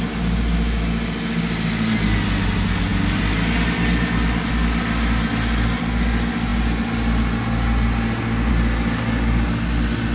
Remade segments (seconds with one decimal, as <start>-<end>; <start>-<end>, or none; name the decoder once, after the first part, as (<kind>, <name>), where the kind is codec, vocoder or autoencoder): none

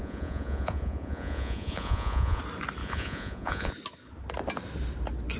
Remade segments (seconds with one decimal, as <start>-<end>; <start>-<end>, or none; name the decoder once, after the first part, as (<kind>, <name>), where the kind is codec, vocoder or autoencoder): 0.0-2.4 (vocoder, Vocos); 2.8-3.7

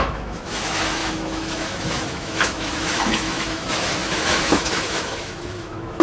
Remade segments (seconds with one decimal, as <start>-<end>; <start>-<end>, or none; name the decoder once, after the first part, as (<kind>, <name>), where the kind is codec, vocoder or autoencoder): 0.0-6.0 (autoencoder, DAC-VAE)

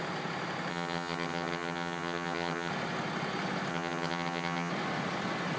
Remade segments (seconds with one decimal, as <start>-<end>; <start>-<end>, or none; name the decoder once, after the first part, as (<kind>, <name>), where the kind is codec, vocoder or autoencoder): 0.7-2.7 (vocoder, HiFi-GAN); 3.7-4.7

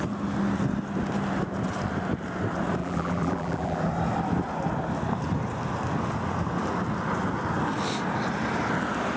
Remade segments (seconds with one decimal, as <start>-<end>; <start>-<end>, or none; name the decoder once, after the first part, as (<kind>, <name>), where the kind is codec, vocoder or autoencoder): 2.8-3.8 (vocoder, BigVGAN v2)

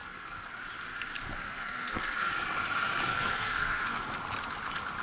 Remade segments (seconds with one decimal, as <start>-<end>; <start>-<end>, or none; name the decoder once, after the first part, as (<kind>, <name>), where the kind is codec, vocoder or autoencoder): 0.0-0.6 (codec, SNAC); 1.3-2.3; 3.1-4.0

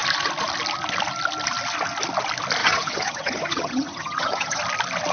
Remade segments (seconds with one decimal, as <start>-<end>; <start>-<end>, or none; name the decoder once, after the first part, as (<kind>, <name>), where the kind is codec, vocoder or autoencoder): 2.6-4.6 (vocoder, HiFi-GAN)